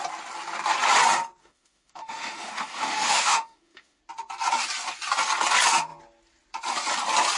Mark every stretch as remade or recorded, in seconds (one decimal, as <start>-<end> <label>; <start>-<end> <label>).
0.0-1.4 recorded; 1.4-4.0 remade; 4.0-7.4 recorded